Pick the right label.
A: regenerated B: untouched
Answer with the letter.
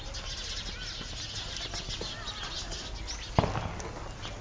B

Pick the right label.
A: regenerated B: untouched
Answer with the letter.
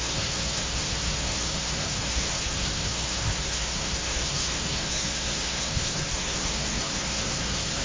A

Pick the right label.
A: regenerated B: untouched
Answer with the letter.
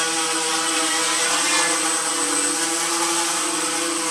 B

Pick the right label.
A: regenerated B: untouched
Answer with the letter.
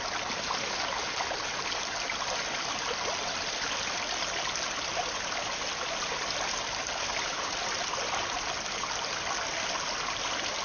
B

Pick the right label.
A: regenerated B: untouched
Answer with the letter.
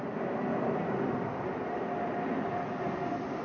B